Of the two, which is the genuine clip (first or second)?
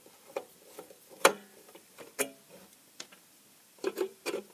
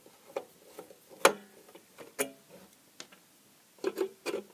second